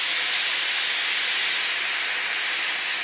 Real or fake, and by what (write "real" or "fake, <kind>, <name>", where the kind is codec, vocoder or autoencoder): real